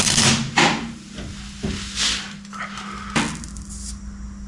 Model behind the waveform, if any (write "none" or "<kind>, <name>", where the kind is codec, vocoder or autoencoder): none